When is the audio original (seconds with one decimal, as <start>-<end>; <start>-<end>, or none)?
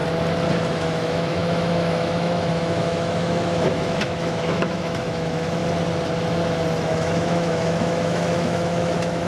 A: 0.0-0.6; 5.6-6.9